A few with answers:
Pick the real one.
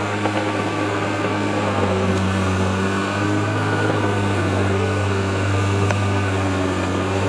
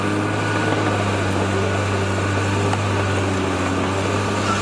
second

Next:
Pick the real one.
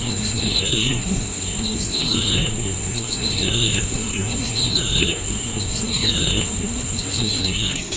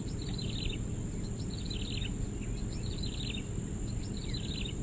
second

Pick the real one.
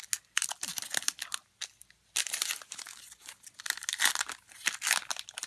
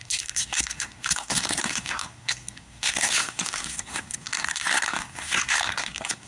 first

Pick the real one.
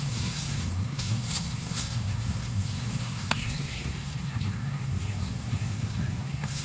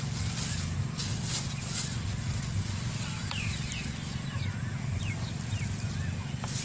second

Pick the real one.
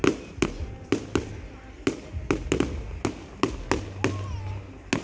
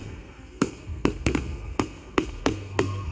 first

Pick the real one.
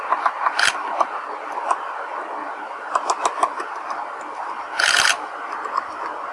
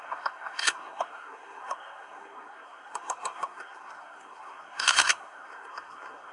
first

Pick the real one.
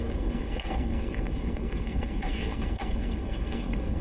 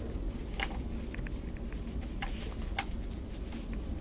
second